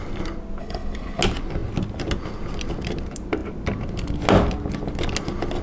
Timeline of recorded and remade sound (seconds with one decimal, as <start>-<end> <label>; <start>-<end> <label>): 0.0-0.6 recorded; 0.6-1.2 remade; 1.2-5.6 recorded

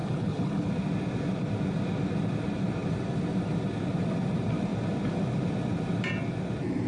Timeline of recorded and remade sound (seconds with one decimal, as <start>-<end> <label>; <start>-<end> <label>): 0.0-0.7 remade; 0.7-6.9 recorded

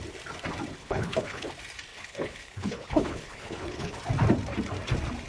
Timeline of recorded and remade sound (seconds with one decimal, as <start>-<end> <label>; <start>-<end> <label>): 0.0-0.8 recorded; 0.8-1.5 remade; 1.5-1.9 recorded; 1.9-4.0 remade; 4.0-5.3 recorded

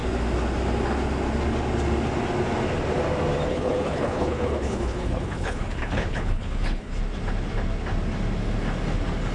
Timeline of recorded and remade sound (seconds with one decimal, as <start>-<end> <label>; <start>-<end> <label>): 0.0-3.5 recorded; 3.5-7.0 remade; 7.0-9.3 recorded

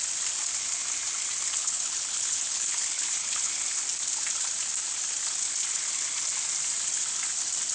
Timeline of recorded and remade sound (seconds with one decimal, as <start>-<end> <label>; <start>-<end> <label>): 0.0-1.6 recorded; 1.6-3.5 remade; 3.5-7.7 recorded

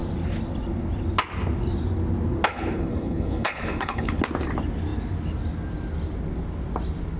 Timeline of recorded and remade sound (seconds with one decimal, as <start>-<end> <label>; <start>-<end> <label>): 0.0-2.5 recorded; 2.5-4.2 remade; 4.2-7.2 recorded

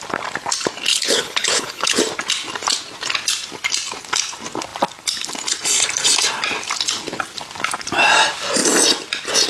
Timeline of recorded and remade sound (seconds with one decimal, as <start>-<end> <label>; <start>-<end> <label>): 0.0-0.9 recorded; 0.9-2.0 remade; 2.0-9.5 recorded

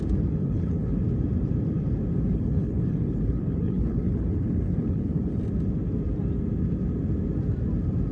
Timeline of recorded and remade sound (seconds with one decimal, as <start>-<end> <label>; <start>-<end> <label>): 0.0-0.4 recorded; 0.4-0.9 remade; 0.9-2.3 recorded; 2.3-5.4 remade; 5.4-8.1 recorded